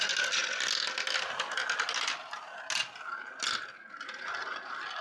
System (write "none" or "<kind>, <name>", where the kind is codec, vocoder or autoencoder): none